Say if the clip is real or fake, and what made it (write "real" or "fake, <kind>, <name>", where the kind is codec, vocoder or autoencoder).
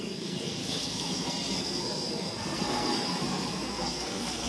fake, codec, SNAC